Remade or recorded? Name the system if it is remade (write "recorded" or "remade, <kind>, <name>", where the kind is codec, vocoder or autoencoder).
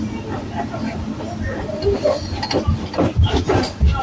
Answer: recorded